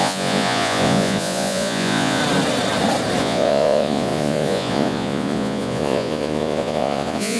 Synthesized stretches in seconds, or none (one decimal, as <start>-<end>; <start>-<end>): 0.0-2.2; 3.2-7.4